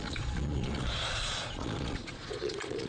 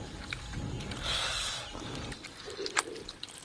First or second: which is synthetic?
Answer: first